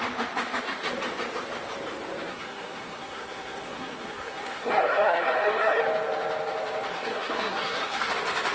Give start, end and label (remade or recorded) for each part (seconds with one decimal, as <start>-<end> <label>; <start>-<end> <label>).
0.0-2.3 recorded; 2.3-5.8 remade; 5.8-6.9 recorded; 6.9-8.1 remade; 8.1-8.5 recorded